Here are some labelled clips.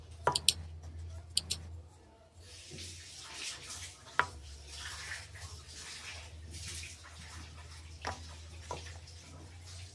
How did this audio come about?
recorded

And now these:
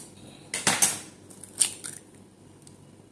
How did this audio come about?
recorded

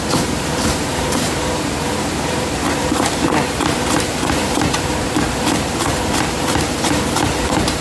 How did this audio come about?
remade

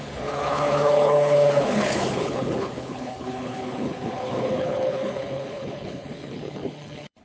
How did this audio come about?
remade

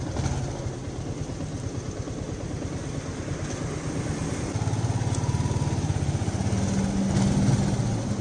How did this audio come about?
recorded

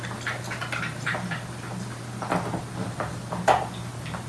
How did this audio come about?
recorded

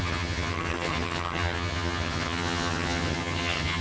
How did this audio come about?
remade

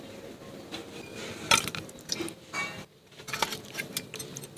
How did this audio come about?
recorded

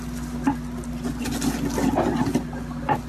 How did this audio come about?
recorded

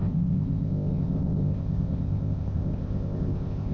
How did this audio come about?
remade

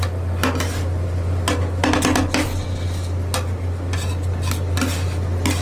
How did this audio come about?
recorded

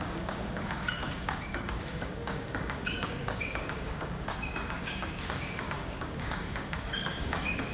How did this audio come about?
remade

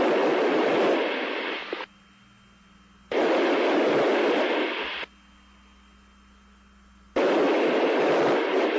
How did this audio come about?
recorded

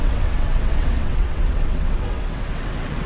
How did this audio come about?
remade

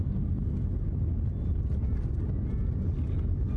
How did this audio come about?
recorded